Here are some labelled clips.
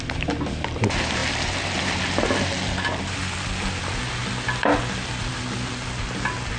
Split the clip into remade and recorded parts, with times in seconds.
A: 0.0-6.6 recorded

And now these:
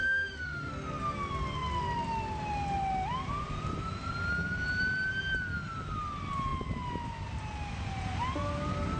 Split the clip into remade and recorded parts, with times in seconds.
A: 0.0-0.7 remade; 0.7-9.0 recorded

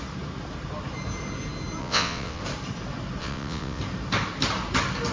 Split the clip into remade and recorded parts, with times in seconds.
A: 0.0-1.8 recorded; 1.8-2.4 remade; 2.4-3.2 recorded; 3.2-3.8 remade; 3.8-5.1 recorded

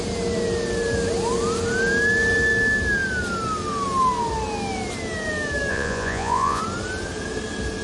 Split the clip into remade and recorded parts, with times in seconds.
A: 0.0-5.7 recorded; 5.7-6.6 remade; 6.6-7.8 recorded

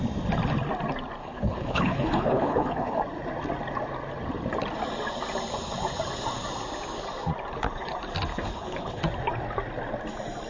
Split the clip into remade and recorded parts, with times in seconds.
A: 0.0-1.2 recorded; 1.2-3.0 remade; 3.0-8.3 recorded; 8.3-9.0 remade; 9.0-10.5 recorded

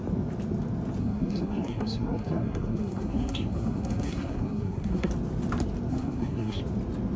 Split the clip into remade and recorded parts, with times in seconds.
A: 0.0-1.0 recorded; 1.0-5.1 remade; 5.1-5.9 recorded; 5.9-6.6 remade; 6.6-7.2 recorded

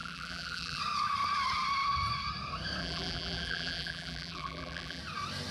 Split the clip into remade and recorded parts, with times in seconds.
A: 0.0-0.8 remade; 0.8-2.8 recorded; 2.8-5.0 remade; 5.0-5.5 recorded